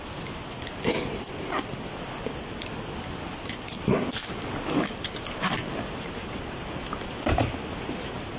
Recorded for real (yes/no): yes